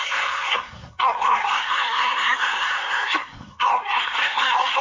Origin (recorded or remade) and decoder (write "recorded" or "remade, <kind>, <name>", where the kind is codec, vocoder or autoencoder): remade, codec, SNAC